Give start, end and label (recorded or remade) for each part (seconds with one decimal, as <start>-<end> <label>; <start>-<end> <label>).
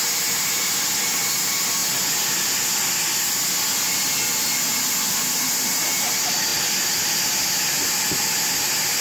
0.0-9.0 recorded